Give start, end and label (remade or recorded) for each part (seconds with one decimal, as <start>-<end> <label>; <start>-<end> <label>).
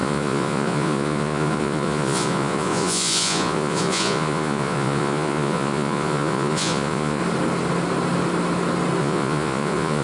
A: 0.0-7.2 remade; 7.2-9.0 recorded; 9.0-10.0 remade